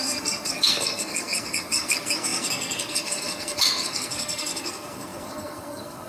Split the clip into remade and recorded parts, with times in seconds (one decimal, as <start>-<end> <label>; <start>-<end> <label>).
0.0-6.1 remade